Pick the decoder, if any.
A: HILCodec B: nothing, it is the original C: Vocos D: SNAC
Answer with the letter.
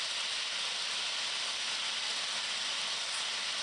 B